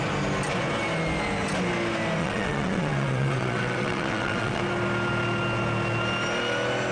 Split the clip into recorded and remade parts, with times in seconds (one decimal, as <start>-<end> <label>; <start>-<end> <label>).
0.0-2.2 recorded; 2.2-4.6 remade; 4.6-6.9 recorded